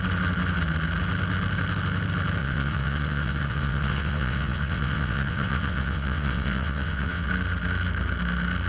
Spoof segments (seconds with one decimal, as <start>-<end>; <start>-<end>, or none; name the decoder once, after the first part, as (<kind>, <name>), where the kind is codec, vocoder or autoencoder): 2.4-7.3 (vocoder, WaveNeXt)